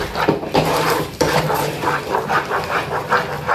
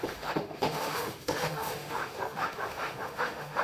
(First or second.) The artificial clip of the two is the second